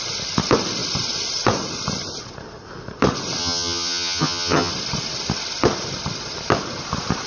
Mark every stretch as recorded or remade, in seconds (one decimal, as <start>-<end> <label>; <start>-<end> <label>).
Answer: 0.0-3.4 recorded; 3.4-4.7 remade; 4.7-7.3 recorded

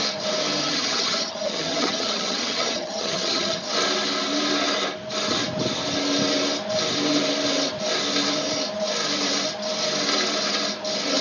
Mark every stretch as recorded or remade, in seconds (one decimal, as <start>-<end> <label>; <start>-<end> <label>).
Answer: 0.0-0.6 recorded; 0.6-3.6 remade; 3.6-11.2 recorded